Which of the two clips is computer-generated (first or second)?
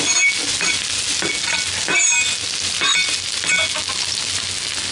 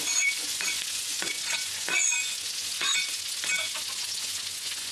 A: second